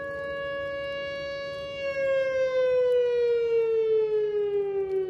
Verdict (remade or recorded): recorded